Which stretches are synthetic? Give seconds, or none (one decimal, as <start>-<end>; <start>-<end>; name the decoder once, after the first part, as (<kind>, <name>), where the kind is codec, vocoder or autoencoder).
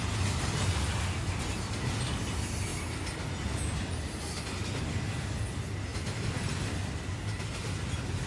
none